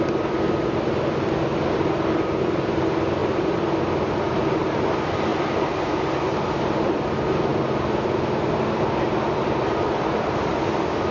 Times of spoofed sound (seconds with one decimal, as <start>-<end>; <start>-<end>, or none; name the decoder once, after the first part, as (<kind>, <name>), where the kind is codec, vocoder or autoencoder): none